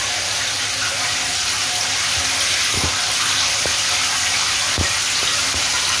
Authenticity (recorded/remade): recorded